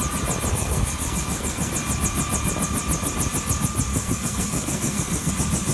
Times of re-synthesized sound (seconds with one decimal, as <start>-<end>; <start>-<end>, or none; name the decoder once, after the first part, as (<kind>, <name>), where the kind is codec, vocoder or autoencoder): 0.5-1.7 (codec, SNAC); 3.9-5.3